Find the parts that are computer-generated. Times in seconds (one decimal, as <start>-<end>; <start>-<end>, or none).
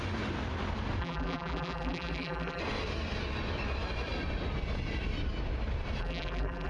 1.0-2.6; 6.0-6.7